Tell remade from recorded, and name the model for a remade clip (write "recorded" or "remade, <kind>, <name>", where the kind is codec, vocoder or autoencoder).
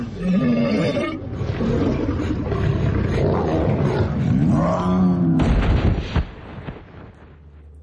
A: recorded